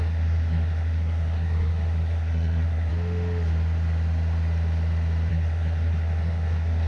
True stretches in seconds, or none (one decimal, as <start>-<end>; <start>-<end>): 2.9-5.3